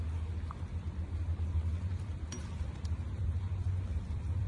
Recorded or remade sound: remade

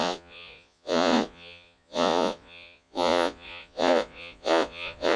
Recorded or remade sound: remade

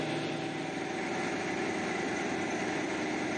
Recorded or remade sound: recorded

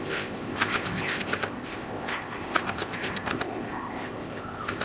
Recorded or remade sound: remade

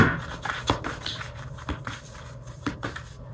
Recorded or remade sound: recorded